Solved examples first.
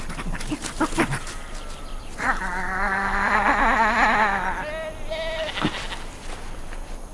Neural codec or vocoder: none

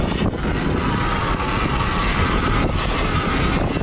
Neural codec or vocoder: none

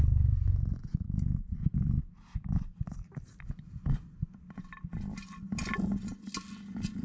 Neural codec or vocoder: none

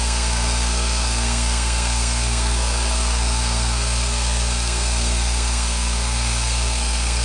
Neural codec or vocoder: codec, SNAC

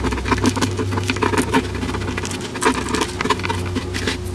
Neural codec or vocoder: none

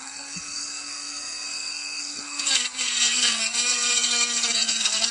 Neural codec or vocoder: codec, SNAC